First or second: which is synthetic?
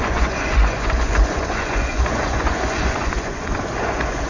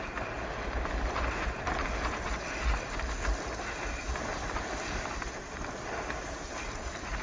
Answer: first